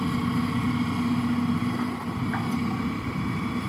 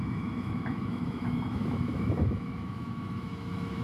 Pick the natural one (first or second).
first